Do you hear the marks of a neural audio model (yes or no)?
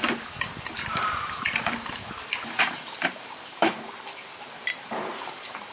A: yes